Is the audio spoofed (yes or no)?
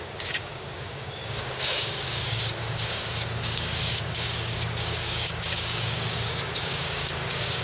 yes